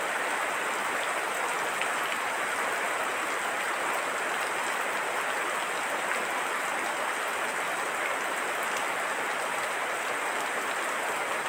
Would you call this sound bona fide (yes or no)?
yes